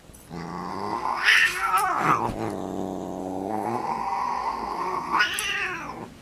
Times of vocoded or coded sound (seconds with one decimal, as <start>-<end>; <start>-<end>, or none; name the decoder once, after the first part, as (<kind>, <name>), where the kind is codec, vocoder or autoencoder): 0.7-1.7 (codec, SNAC); 3.2-5.2